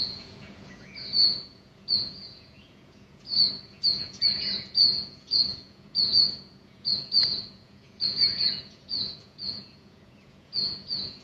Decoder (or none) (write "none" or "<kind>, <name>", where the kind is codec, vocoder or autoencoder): vocoder, Vocos